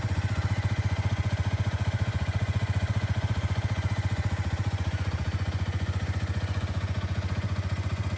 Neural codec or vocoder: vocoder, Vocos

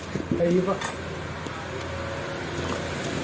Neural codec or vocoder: none